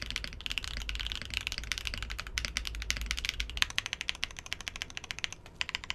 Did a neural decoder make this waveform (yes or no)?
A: no